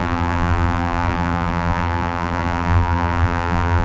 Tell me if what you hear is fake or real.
fake